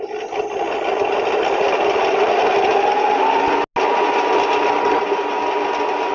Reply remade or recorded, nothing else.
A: recorded